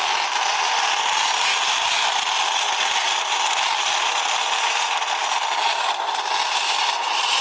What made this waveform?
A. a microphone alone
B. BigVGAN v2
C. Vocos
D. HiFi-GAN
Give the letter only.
A